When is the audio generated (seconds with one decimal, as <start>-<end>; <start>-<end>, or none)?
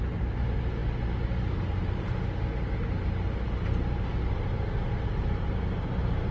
none